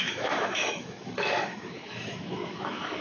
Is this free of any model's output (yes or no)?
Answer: no